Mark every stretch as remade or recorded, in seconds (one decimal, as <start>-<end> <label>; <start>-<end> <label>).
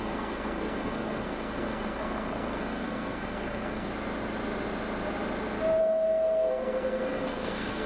0.0-3.9 remade; 3.9-5.8 recorded; 5.8-7.9 remade